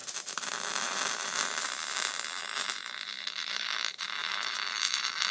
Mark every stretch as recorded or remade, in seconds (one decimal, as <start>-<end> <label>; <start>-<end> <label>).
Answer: 0.0-0.8 recorded; 0.8-5.3 remade